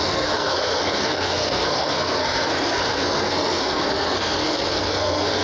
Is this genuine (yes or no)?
no